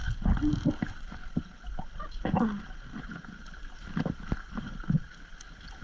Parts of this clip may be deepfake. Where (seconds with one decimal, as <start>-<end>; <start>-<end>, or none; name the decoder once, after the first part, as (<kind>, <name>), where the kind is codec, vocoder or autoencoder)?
none